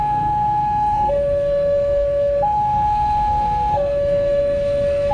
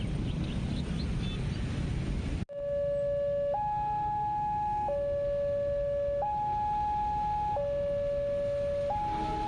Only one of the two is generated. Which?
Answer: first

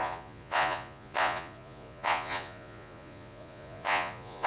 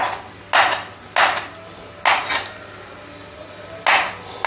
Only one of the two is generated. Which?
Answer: first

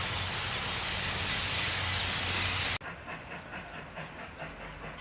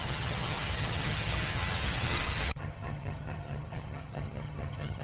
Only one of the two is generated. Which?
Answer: second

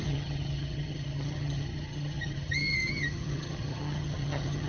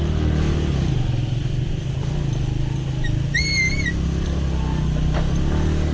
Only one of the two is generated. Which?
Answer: first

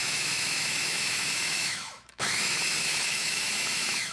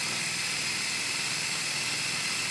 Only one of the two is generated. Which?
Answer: first